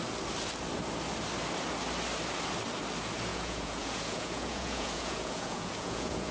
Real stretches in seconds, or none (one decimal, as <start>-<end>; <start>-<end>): 0.0-3.3